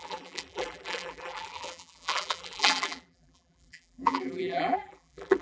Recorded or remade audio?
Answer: remade